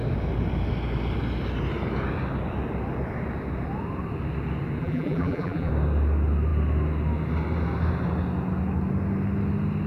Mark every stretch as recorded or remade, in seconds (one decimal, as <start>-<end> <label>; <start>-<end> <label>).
0.0-4.8 recorded; 4.8-5.7 remade; 5.7-9.9 recorded